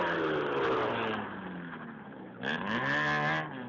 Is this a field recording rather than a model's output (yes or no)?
yes